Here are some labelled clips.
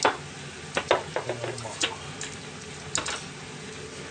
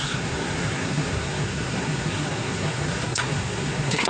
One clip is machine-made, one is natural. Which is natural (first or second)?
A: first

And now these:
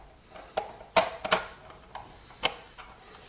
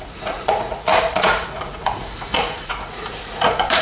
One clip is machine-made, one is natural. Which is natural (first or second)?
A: first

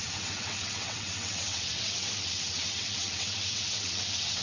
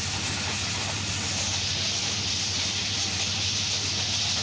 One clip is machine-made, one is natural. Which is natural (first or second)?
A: second